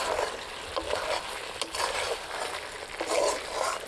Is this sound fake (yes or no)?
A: no